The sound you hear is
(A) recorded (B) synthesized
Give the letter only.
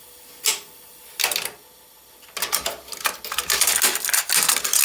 A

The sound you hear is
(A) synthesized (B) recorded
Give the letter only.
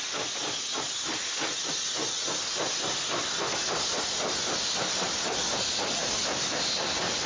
B